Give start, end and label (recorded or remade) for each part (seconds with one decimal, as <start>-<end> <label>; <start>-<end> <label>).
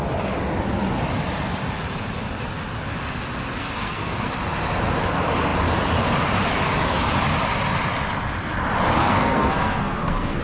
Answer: 0.0-3.6 recorded; 3.6-4.3 remade; 4.3-9.0 recorded; 9.0-10.4 remade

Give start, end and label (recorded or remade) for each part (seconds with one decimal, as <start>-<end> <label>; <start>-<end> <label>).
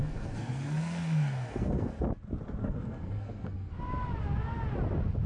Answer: 0.0-1.9 remade; 1.9-2.6 recorded; 2.6-3.7 remade; 3.7-5.3 recorded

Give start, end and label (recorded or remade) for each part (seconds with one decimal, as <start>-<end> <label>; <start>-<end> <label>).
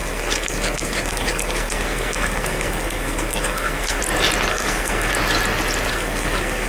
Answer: 0.0-4.0 remade; 4.0-4.5 recorded; 4.5-5.1 remade; 5.1-5.9 recorded; 5.9-6.7 remade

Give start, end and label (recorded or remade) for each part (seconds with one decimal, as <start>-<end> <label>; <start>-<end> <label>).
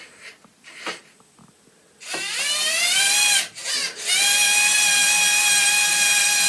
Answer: 0.0-6.5 recorded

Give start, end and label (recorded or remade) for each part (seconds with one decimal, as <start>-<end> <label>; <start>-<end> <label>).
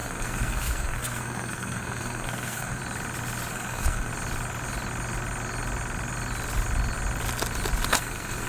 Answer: 0.0-2.8 remade; 2.8-3.5 recorded; 3.5-4.1 remade; 4.1-7.9 recorded; 7.9-8.5 remade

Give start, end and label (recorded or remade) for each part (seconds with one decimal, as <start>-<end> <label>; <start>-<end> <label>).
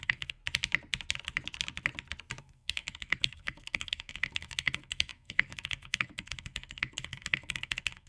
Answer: 0.0-0.4 remade; 0.4-2.4 recorded; 2.4-8.1 remade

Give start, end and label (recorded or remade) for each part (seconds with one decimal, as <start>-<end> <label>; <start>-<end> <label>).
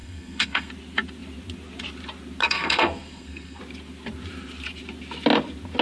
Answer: 0.0-0.7 remade; 0.7-2.4 recorded; 2.4-3.6 remade; 3.6-5.8 recorded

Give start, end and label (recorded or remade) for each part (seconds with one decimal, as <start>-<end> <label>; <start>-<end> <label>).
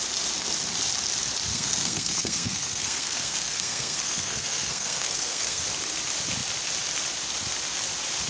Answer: 0.0-1.5 recorded; 1.5-5.6 remade; 5.6-8.3 recorded